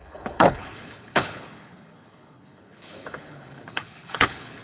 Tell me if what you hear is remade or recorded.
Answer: remade